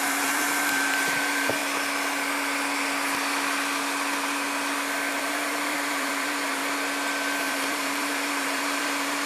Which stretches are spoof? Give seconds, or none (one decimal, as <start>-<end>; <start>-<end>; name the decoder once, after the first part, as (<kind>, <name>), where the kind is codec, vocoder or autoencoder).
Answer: 0.0-1.6 (vocoder, BigVGAN v2); 5.2-6.6; 7.4-9.3